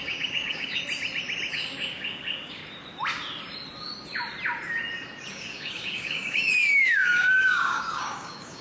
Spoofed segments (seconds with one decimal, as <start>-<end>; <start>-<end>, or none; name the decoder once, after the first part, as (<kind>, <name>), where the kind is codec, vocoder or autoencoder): 0.0-0.8 (codec, DAC); 1.5-2.6; 5.3-8.6